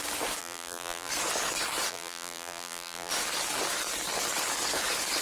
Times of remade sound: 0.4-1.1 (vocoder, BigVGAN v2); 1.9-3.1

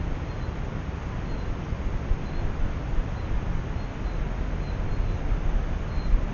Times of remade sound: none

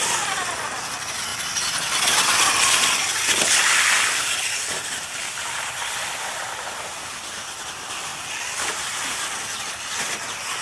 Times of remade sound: none

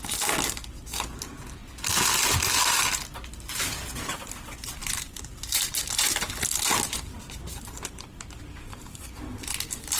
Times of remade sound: 4.8-9.0 (vocoder, BigVGAN v2)